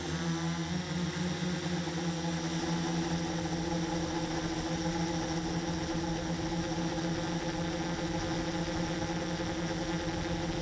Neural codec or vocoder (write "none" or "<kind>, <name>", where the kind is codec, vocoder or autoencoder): none